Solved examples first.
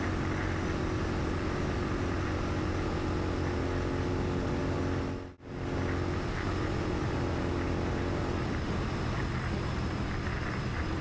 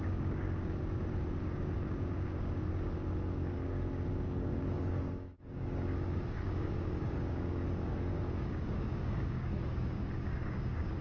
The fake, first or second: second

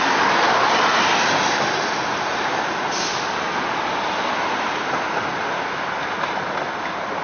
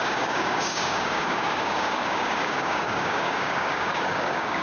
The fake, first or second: second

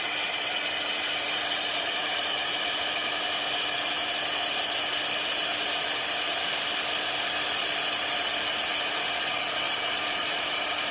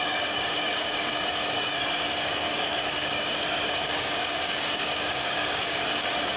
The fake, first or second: second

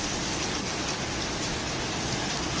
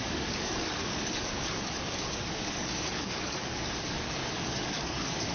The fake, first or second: second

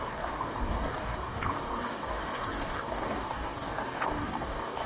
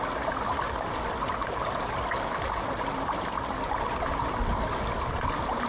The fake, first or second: first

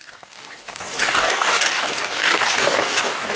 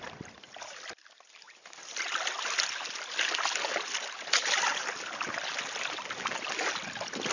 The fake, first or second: first